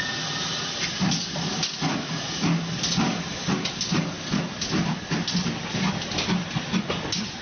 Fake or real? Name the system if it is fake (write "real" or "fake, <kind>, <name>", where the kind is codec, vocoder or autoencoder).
real